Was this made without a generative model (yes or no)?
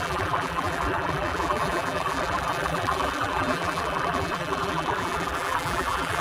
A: no